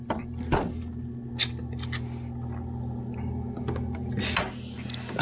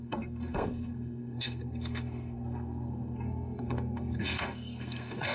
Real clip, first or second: first